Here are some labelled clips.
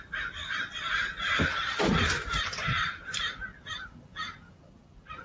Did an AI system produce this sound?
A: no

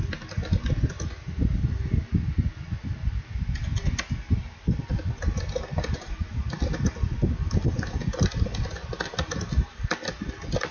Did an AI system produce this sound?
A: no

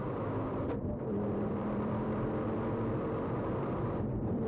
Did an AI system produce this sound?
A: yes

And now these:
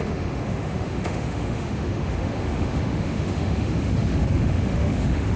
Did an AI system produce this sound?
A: yes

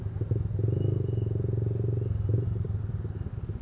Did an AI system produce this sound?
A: no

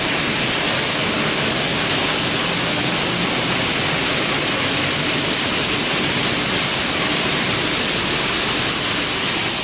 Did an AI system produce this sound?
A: no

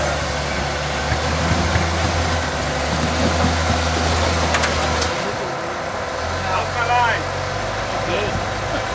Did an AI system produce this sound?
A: no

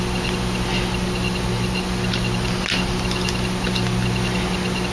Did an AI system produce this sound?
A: no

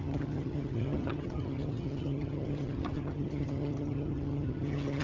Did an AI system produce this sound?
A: yes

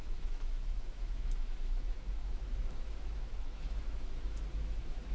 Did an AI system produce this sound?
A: yes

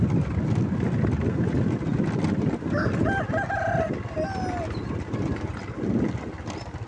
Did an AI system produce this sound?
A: no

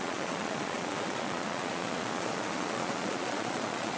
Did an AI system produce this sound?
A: yes